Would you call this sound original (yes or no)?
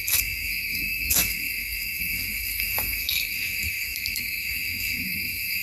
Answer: no